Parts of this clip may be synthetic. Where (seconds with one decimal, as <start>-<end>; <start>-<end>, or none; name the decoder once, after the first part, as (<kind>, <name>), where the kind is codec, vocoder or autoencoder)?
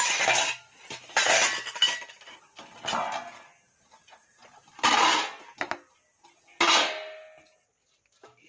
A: none